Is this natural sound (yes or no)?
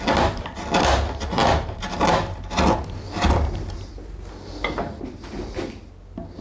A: yes